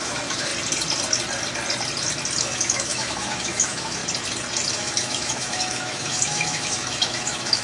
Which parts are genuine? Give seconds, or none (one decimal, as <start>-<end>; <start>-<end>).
0.5-2.4; 4.0-4.7